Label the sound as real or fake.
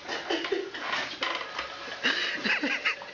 real